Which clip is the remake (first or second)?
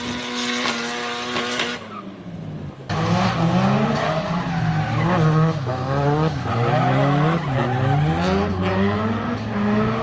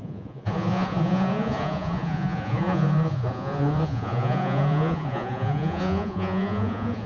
second